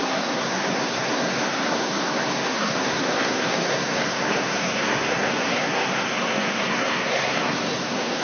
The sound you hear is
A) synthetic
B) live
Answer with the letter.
A